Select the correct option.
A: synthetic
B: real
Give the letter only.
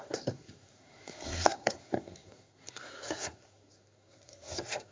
A